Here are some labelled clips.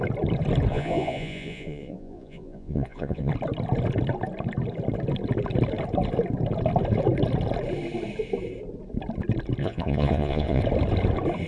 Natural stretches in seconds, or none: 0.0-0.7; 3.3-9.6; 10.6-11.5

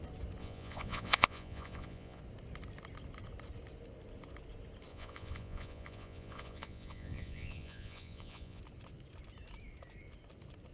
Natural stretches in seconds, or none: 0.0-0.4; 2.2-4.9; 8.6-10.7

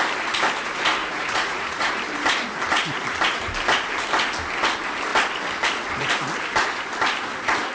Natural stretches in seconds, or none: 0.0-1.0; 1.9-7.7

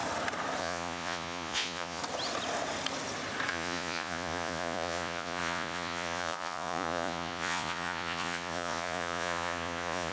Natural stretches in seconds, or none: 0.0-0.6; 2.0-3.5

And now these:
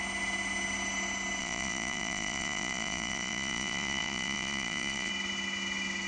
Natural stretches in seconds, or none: 0.0-1.4; 5.1-6.1